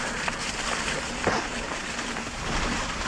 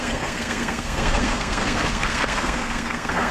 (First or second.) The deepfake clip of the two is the second